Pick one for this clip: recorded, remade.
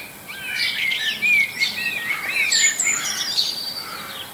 recorded